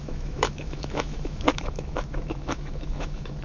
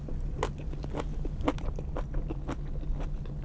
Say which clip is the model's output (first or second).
first